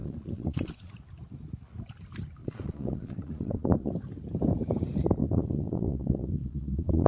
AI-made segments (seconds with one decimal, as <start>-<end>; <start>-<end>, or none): 0.0-0.9; 2.4-3.9; 5.2-7.1